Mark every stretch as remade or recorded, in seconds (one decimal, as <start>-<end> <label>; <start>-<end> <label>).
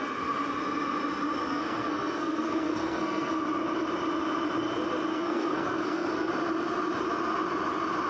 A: 0.0-1.5 recorded; 1.5-3.3 remade; 3.3-5.1 recorded; 5.1-6.3 remade; 6.3-8.1 recorded